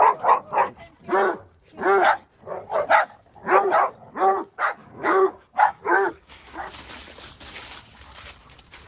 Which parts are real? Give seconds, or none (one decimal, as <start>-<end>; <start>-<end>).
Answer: 0.0-4.8; 6.7-8.9